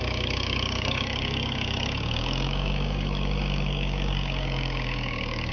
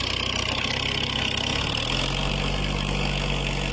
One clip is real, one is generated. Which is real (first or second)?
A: second